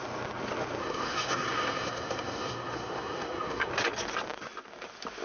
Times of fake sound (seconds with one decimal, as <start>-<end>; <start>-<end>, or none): 0.8-3.7